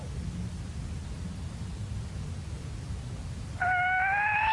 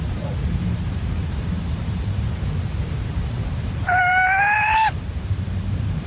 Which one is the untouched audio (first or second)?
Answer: first